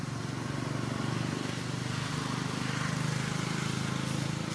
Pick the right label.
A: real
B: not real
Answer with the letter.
A